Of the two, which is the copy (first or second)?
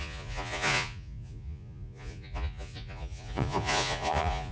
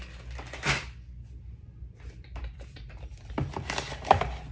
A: first